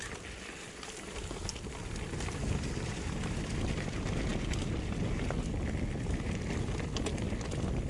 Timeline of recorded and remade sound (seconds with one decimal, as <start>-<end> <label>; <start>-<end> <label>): 0.0-7.9 recorded